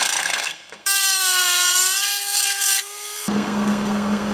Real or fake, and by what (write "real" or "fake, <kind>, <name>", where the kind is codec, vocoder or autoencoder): fake, codec, SNAC